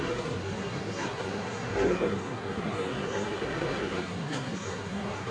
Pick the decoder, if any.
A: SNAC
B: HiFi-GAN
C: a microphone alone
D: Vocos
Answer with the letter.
A